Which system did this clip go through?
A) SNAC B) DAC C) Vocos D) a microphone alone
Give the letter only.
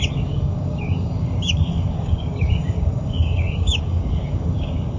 B